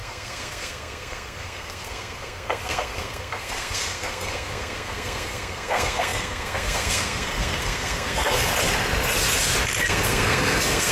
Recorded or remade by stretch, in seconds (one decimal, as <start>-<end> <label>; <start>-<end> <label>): 0.0-8.5 remade; 8.5-9.8 recorded; 9.8-10.9 remade

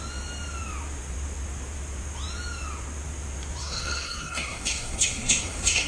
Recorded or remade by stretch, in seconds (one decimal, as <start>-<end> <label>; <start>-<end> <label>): 0.0-3.6 recorded; 3.6-5.9 remade